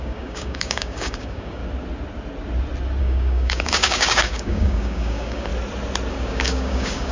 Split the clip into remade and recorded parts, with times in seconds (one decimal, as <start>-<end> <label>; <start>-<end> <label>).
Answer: 0.0-1.6 remade; 1.6-3.0 recorded; 3.0-5.5 remade; 5.5-6.1 recorded; 6.1-7.1 remade